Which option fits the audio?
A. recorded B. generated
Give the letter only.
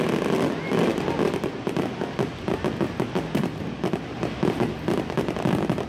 A